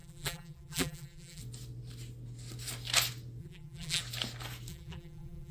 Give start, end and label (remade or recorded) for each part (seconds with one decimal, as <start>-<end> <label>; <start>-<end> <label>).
0.0-1.4 remade; 1.4-3.4 recorded; 3.4-4.0 remade; 4.0-4.7 recorded; 4.7-5.5 remade